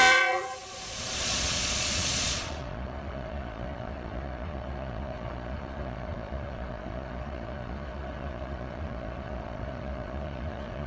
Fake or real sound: fake